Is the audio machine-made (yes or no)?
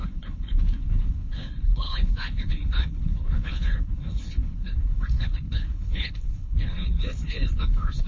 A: yes